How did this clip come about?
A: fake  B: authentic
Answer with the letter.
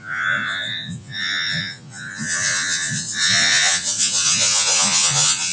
A